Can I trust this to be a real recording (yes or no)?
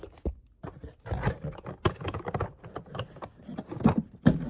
yes